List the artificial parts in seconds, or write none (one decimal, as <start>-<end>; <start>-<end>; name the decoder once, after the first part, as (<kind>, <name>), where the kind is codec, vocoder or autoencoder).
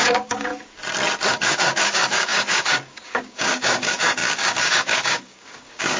0.0-0.5 (codec, DAC); 1.3-6.0